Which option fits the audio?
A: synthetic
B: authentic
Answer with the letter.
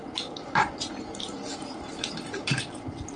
B